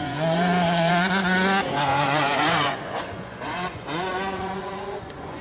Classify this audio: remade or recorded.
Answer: remade